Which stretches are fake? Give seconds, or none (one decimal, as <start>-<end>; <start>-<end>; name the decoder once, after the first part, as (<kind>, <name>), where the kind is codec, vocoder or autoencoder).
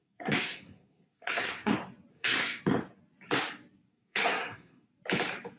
0.0-1.7 (codec, SNAC); 2.1-2.6; 3.9-4.9